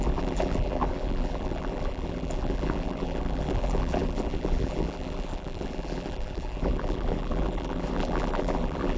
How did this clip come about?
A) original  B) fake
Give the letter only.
B